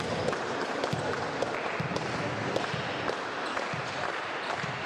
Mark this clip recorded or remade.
recorded